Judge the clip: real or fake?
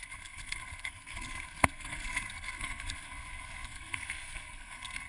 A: fake